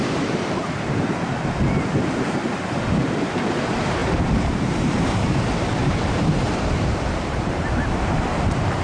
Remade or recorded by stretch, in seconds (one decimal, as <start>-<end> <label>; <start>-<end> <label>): 0.0-2.4 remade; 2.4-3.0 recorded; 3.0-8.8 remade